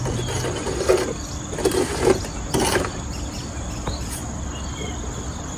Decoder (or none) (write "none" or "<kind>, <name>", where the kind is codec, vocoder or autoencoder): none